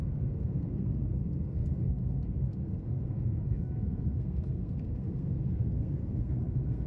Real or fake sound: fake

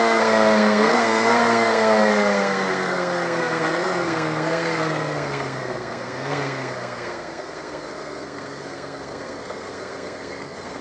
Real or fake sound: fake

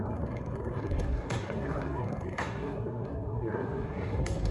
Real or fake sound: fake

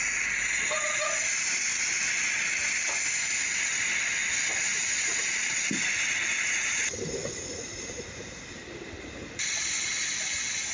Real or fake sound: real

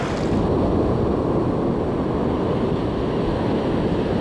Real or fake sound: real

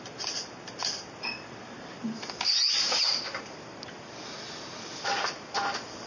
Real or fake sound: real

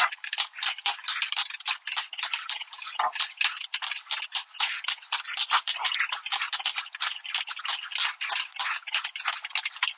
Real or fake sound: real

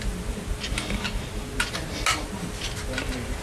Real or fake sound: real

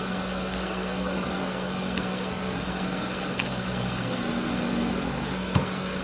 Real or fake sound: fake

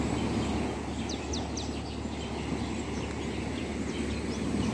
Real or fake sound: real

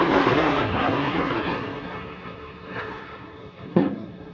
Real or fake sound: fake